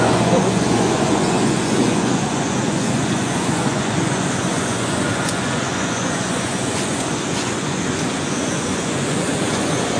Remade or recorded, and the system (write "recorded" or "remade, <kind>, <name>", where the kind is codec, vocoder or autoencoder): remade, vocoder, Vocos